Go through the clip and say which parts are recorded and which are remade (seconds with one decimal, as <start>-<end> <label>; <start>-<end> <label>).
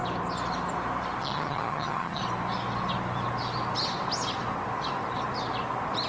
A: 0.0-1.2 recorded; 1.2-2.2 remade; 2.2-6.1 recorded